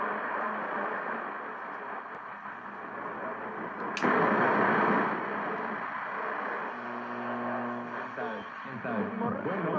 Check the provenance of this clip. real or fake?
real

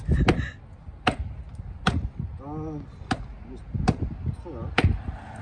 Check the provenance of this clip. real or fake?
real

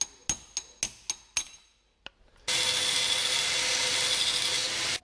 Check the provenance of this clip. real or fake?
real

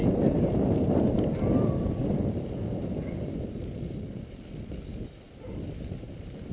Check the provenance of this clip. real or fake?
real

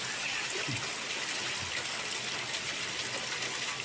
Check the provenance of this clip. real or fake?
real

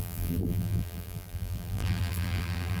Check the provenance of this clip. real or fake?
fake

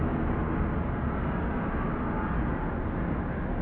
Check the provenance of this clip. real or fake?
real